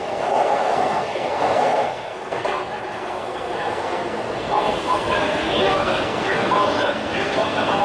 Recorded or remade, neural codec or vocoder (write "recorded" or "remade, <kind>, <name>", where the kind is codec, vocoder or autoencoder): remade, codec, SNAC